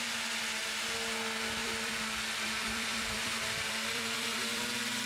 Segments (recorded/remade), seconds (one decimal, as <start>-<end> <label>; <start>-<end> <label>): 0.0-1.6 recorded; 1.6-5.1 remade